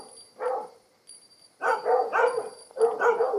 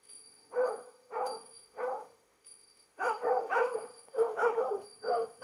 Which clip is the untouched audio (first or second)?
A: first